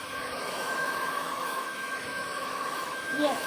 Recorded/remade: remade